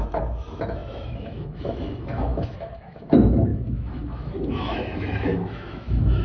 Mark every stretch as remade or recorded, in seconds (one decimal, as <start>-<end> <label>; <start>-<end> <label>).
0.0-6.2 remade